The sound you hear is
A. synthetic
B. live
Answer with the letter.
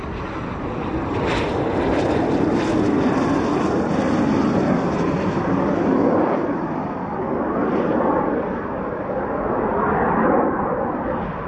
B